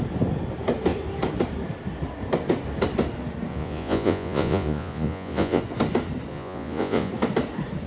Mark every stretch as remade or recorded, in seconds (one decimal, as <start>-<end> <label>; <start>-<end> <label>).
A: 0.0-3.5 recorded; 3.5-5.6 remade; 5.6-6.3 recorded; 6.3-7.1 remade; 7.1-7.9 recorded